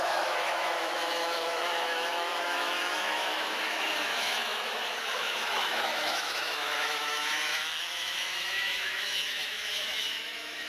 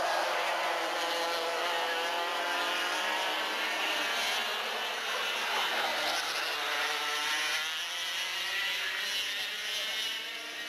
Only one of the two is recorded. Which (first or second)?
second